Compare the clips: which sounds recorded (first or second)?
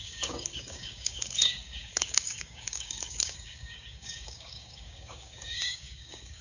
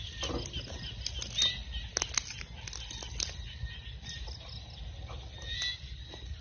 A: second